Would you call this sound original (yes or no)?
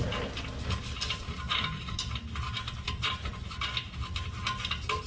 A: yes